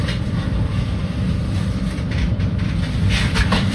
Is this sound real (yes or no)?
no